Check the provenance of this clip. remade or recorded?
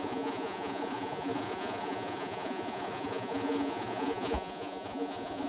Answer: remade